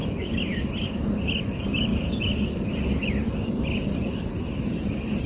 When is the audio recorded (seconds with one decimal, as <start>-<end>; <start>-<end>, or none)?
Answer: 0.7-1.9; 3.1-5.3